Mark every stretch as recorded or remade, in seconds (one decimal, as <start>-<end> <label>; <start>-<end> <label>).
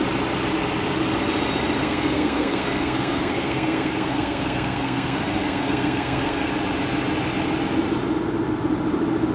0.0-1.8 recorded; 1.8-6.5 remade; 6.5-9.3 recorded